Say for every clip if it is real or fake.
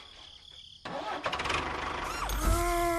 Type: real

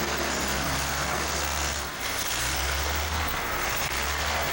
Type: fake